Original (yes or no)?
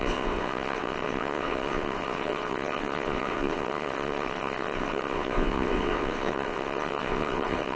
no